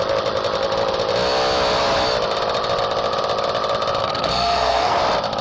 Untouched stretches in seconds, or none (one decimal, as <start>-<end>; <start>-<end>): 0.0-4.0; 5.0-5.4